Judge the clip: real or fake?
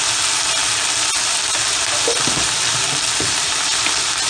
real